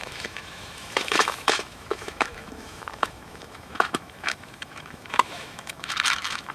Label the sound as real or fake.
fake